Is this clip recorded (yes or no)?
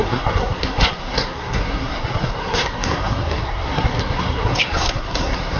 no